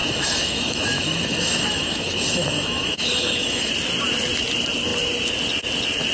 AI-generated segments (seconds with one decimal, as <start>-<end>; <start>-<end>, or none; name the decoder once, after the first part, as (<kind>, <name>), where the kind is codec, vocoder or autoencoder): 0.0-3.7 (autoencoder, DAC-VAE)